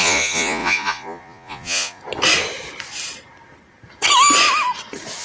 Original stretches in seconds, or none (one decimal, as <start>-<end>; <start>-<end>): 2.0-5.2